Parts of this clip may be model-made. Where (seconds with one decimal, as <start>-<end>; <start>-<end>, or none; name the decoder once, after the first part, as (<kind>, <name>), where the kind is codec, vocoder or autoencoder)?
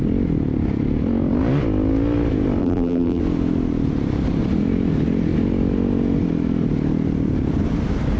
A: 2.6-3.2 (vocoder, BigVGAN v2)